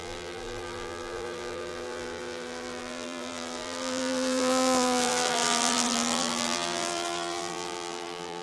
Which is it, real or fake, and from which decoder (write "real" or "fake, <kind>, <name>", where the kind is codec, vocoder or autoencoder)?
fake, vocoder, BigVGAN v2